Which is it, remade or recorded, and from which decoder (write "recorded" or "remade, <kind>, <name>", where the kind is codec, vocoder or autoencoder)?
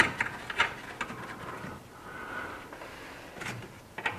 recorded